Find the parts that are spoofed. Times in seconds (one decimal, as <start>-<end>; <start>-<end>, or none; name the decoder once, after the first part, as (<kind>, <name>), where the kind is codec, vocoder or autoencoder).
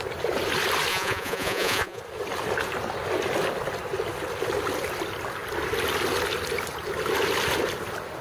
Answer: 0.9-2.0 (vocoder, Vocos)